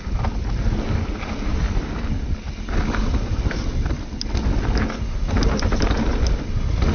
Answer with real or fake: real